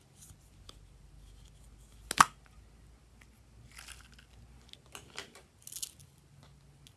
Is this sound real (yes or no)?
yes